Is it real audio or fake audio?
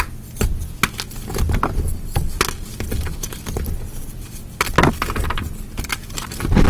real